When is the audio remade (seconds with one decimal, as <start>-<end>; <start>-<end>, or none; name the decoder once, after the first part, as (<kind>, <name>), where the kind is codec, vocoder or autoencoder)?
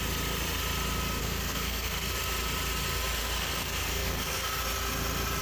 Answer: 1.2-2.1 (codec, SNAC); 3.2-4.6